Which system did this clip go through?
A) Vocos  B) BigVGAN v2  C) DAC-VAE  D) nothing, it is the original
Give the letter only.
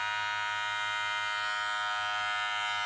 D